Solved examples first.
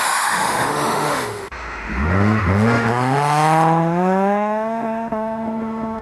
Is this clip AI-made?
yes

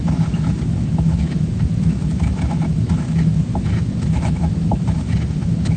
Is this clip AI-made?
yes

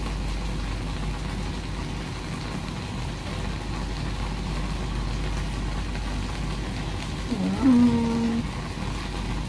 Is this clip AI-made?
no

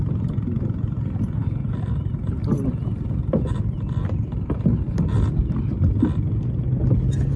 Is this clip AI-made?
no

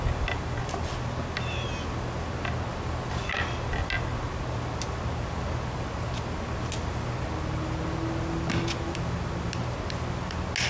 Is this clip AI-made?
no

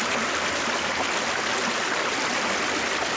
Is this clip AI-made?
no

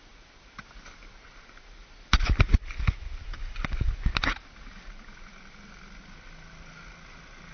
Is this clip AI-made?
no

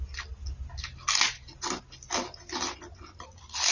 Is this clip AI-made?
no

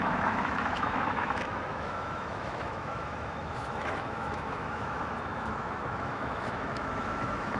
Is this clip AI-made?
yes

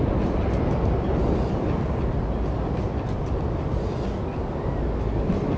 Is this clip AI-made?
no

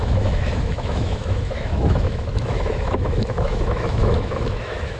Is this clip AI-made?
yes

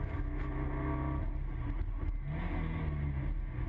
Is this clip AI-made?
no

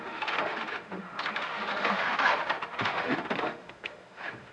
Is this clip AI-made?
yes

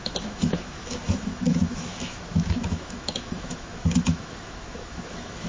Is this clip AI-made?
yes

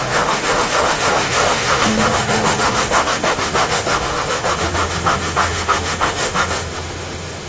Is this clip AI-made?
yes